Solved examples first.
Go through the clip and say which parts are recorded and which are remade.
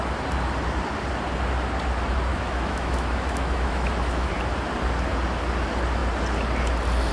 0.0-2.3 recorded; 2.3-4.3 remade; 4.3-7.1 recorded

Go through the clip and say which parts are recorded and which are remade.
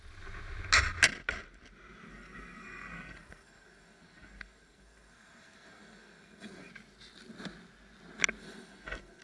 0.0-2.1 recorded; 2.1-6.7 remade; 6.7-8.4 recorded; 8.4-9.2 remade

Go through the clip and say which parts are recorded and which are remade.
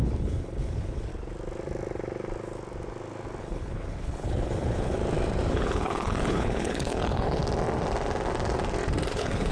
0.0-1.1 remade; 1.1-3.4 recorded; 3.4-5.0 remade; 5.0-5.5 recorded; 5.5-7.4 remade; 7.4-9.1 recorded; 9.1-9.5 remade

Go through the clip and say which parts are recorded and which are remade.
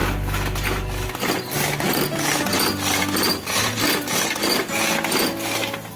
0.0-6.0 recorded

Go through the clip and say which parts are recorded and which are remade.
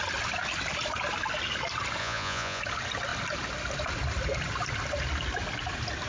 0.0-2.0 recorded; 2.0-2.6 remade; 2.6-6.1 recorded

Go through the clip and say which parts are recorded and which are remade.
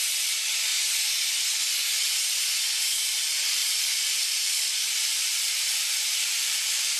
0.0-3.6 recorded; 3.6-7.0 remade